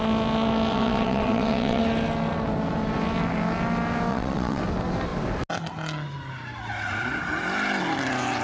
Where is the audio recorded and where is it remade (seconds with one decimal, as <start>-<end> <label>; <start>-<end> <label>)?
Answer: 0.0-0.7 recorded; 0.7-1.8 remade; 1.8-4.1 recorded; 4.1-4.6 remade; 4.6-8.4 recorded